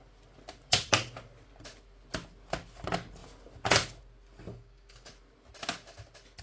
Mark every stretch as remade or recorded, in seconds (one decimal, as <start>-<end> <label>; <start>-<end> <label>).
0.0-4.5 recorded; 4.5-5.1 remade; 5.1-6.4 recorded